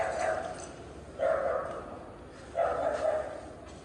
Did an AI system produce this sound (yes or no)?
no